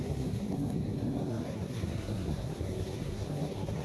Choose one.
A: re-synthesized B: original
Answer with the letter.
A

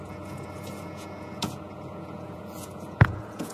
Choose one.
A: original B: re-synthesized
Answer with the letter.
B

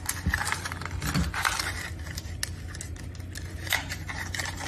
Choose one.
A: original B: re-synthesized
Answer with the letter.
A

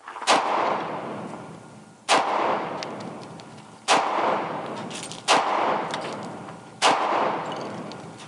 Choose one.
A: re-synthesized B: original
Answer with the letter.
B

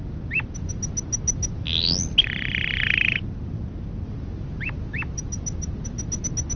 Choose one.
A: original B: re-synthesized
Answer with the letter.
A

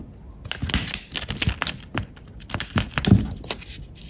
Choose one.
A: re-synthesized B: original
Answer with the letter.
B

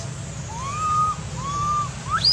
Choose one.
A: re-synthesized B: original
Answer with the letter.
B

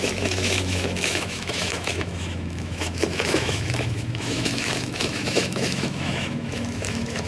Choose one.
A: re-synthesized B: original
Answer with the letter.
A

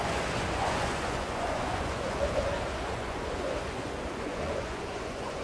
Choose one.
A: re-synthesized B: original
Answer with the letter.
A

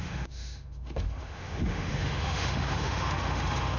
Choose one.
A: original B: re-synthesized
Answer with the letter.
B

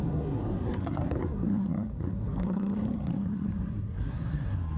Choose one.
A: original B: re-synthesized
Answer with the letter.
B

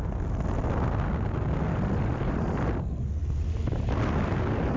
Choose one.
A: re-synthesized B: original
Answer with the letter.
B